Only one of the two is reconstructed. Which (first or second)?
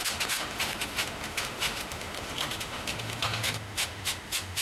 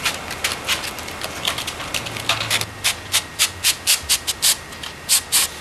first